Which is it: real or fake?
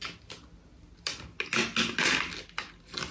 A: real